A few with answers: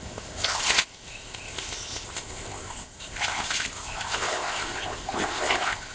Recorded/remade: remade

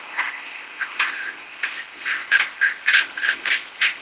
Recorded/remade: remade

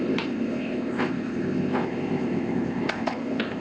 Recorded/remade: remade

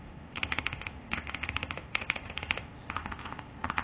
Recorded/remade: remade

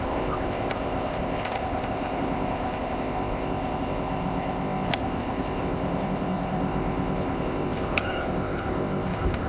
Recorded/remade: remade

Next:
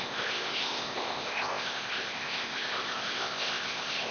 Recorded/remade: remade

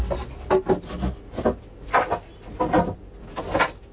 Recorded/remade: recorded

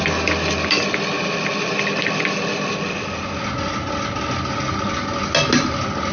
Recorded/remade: recorded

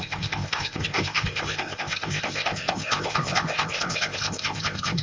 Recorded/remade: remade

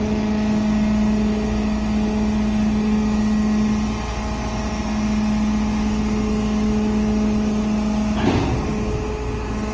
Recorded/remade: recorded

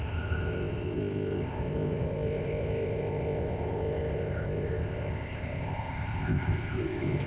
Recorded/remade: remade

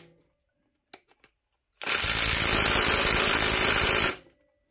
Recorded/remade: recorded